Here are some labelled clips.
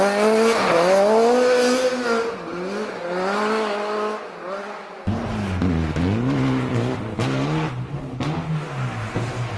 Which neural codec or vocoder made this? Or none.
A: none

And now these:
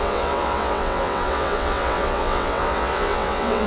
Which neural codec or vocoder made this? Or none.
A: vocoder, WaveNeXt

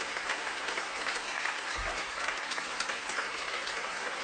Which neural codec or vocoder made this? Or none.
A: codec, SNAC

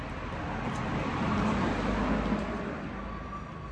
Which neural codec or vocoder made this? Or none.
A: none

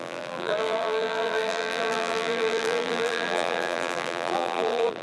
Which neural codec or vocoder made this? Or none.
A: vocoder, BigVGAN v2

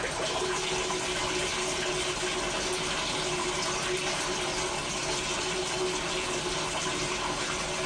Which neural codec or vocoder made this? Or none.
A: none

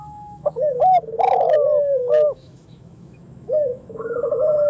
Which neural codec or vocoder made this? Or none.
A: autoencoder, DAC-VAE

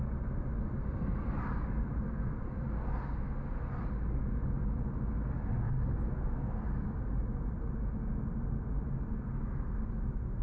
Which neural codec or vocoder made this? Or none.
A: none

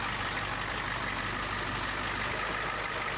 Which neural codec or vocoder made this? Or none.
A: none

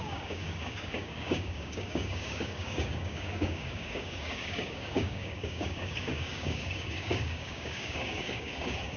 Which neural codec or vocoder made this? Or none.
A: codec, DAC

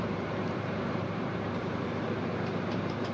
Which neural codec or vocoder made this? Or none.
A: vocoder, BigVGAN v2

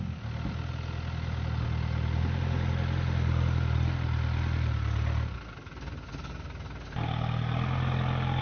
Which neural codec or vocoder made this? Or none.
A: none